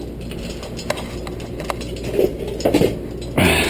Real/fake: real